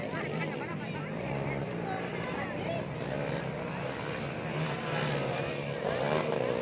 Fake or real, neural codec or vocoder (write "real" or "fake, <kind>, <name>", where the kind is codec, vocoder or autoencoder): real